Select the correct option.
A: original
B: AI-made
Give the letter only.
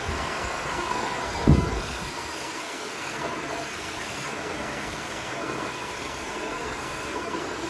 B